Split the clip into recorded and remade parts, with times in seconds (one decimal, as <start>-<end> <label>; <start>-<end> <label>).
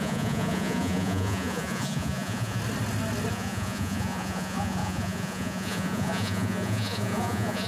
0.0-2.6 remade; 2.6-3.3 recorded; 3.3-7.7 remade